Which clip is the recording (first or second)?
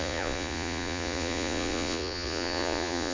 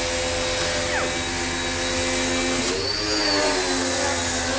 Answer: second